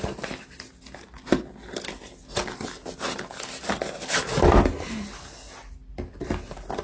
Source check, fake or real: real